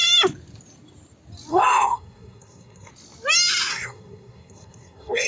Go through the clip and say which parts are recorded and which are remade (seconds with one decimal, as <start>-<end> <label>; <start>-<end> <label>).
0.0-1.5 recorded; 1.5-2.9 remade; 2.9-3.7 recorded; 3.7-5.3 remade